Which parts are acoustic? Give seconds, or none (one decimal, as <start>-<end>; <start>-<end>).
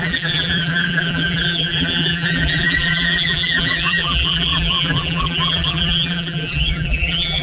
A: none